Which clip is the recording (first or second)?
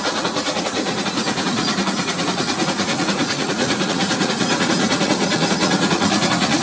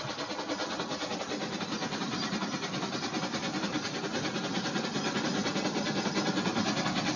second